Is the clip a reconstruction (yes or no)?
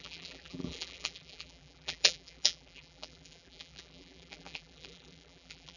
yes